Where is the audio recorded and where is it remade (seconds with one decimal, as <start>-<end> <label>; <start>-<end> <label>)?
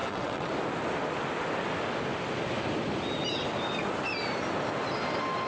0.0-0.5 remade; 0.5-5.5 recorded